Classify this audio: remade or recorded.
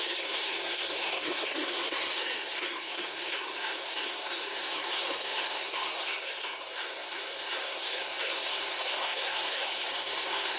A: remade